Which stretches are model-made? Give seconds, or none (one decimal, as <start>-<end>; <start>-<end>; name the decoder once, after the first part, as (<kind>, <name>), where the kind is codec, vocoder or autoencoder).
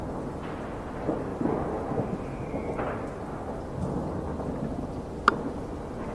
1.3-1.9 (vocoder, BigVGAN v2)